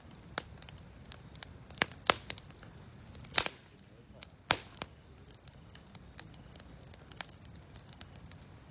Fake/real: real